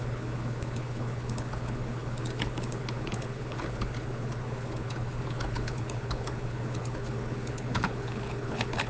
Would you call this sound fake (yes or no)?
yes